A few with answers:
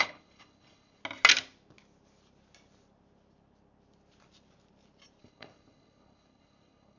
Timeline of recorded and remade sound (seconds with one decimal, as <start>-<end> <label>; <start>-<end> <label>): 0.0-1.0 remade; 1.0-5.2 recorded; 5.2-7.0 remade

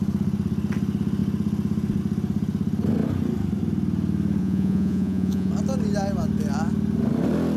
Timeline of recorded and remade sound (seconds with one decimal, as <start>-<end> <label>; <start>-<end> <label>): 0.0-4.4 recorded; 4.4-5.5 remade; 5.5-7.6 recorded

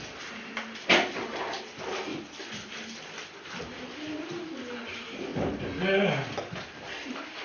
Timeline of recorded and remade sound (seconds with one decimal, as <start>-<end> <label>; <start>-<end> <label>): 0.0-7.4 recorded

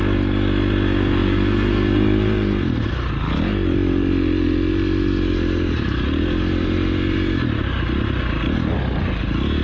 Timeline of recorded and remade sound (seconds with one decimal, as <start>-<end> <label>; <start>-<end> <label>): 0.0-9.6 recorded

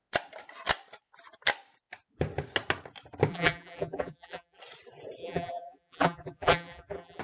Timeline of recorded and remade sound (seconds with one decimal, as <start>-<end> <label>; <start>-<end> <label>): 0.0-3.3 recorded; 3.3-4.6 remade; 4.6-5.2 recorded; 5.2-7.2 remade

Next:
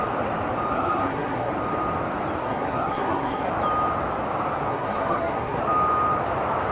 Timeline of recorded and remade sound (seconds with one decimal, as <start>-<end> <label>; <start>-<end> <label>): 0.0-0.7 recorded; 0.7-1.5 remade; 1.5-2.4 recorded; 2.4-3.5 remade; 3.5-4.7 recorded; 4.7-5.6 remade; 5.6-6.7 recorded

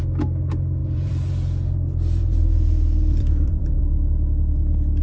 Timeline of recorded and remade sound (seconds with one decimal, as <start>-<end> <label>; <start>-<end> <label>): 0.0-0.8 recorded; 0.8-3.8 remade; 3.8-5.0 recorded